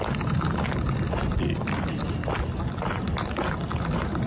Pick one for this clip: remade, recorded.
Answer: recorded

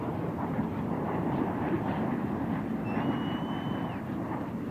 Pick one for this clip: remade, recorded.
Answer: recorded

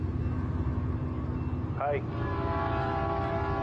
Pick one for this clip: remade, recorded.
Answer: recorded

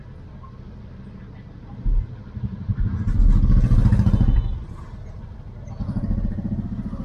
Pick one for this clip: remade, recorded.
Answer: recorded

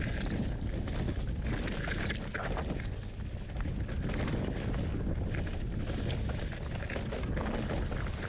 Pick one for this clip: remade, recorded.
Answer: recorded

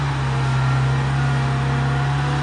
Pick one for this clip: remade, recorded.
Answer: recorded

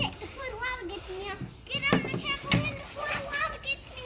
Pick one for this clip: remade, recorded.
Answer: recorded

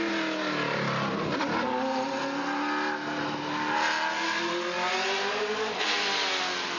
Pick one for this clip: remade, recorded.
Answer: recorded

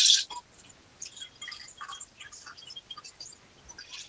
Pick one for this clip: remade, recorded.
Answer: recorded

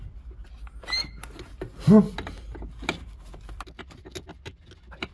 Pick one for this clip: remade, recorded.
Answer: recorded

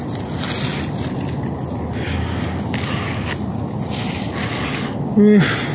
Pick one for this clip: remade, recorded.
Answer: recorded